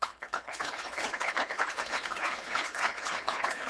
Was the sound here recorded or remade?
remade